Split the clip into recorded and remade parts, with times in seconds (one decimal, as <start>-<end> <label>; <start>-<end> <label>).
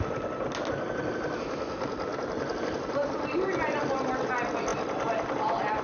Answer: 0.0-5.8 recorded